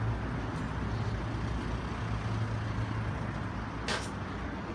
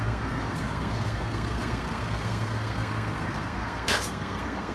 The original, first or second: first